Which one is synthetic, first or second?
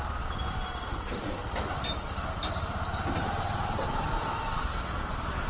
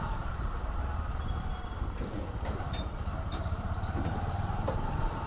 second